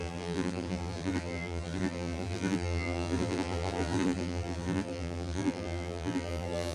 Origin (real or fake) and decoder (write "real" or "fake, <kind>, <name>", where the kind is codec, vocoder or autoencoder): fake, vocoder, BigVGAN v2